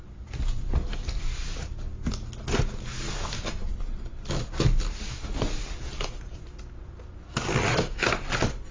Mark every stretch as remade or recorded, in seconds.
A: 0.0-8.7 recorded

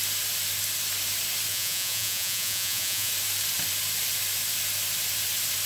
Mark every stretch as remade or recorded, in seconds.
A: 0.0-1.5 recorded; 1.5-3.1 remade; 3.1-5.7 recorded

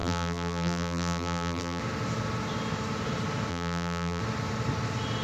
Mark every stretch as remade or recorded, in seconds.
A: 0.0-1.8 remade; 1.8-3.5 recorded; 3.5-4.2 remade; 4.2-5.2 recorded